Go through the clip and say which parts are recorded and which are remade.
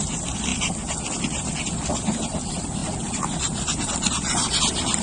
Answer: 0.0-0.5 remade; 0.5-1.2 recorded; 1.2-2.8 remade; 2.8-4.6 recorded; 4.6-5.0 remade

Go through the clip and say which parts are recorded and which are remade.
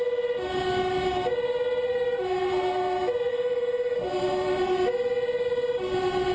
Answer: 0.0-3.3 recorded; 3.3-4.1 remade; 4.1-6.3 recorded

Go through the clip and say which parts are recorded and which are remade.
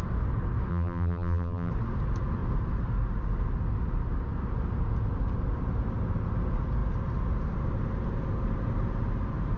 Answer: 0.0-0.7 recorded; 0.7-1.7 remade; 1.7-9.6 recorded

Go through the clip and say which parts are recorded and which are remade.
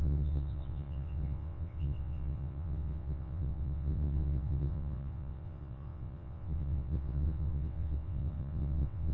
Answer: 0.0-9.1 remade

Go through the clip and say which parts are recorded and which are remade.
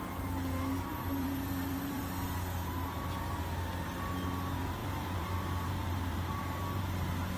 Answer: 0.0-0.9 recorded; 0.9-2.0 remade; 2.0-4.8 recorded; 4.8-7.4 remade